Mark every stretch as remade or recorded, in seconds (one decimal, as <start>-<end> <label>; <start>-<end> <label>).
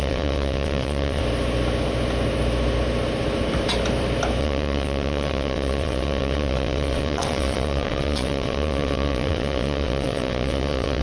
0.0-1.2 remade; 1.2-4.4 recorded; 4.4-11.0 remade